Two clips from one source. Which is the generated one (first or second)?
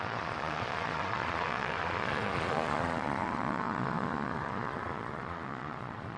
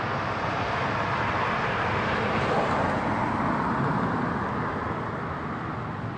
first